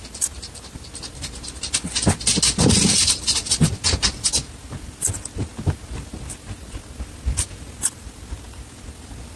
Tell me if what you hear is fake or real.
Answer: real